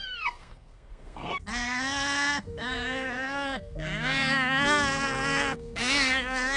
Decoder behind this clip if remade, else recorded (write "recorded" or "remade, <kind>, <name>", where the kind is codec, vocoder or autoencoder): remade, codec, SNAC